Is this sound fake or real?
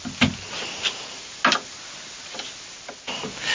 real